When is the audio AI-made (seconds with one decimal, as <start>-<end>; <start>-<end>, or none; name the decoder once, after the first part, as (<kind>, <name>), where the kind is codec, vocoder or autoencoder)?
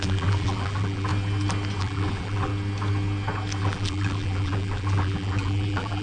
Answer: 0.0-1.1 (vocoder, BigVGAN v2); 1.8-2.5; 3.6-6.0